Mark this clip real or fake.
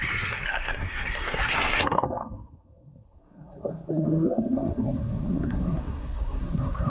fake